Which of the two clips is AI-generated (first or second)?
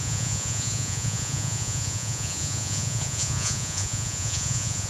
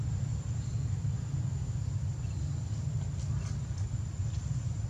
first